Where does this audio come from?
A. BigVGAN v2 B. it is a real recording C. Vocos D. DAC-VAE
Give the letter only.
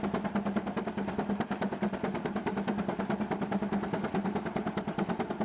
B